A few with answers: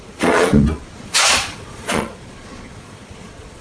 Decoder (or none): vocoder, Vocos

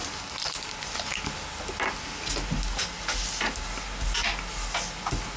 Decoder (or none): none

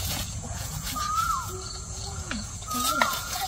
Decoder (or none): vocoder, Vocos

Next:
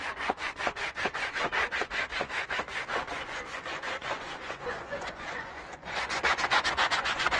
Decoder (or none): vocoder, Vocos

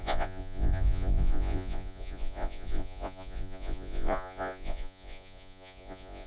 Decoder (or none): vocoder, Vocos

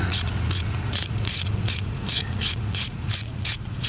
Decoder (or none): vocoder, Vocos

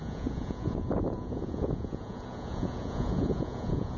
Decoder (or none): vocoder, Vocos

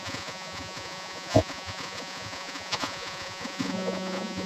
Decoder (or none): vocoder, Vocos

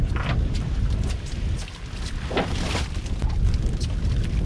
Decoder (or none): none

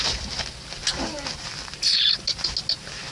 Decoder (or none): none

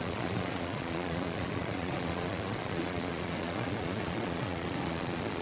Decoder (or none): vocoder, Vocos